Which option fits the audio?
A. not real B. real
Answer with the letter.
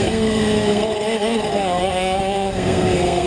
A